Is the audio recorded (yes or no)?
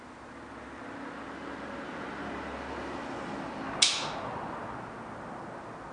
yes